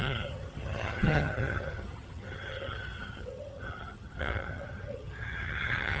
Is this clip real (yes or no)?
no